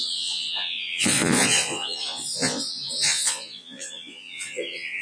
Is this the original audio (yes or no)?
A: no